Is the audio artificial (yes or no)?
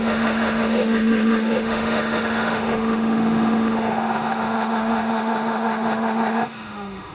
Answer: yes